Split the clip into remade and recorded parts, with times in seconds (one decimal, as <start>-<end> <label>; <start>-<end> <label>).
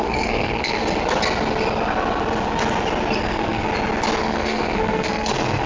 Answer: 0.0-0.8 remade; 0.8-3.2 recorded; 3.2-3.7 remade; 3.7-4.2 recorded; 4.2-5.7 remade